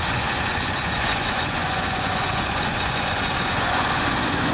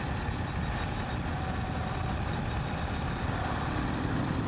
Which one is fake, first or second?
first